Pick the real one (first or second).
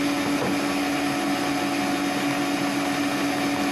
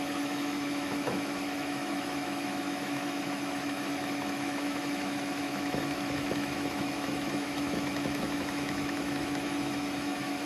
first